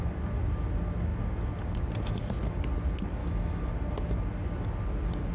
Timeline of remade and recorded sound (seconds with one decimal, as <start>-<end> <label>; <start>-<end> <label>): 0.0-3.2 recorded; 3.2-3.7 remade; 3.7-5.3 recorded